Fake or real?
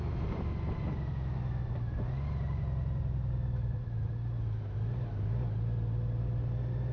real